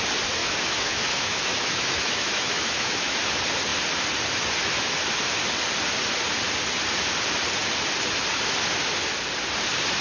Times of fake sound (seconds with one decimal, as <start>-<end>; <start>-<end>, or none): 0.4-3.2